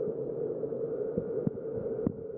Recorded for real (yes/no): yes